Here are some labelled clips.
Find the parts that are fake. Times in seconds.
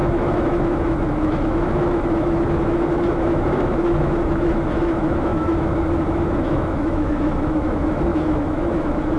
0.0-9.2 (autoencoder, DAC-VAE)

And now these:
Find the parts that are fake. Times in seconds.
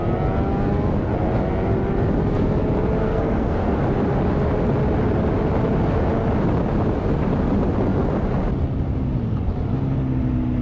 3.0-3.8 (codec, SNAC)